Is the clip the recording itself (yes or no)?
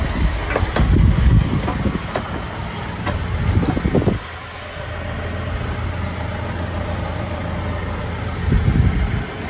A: yes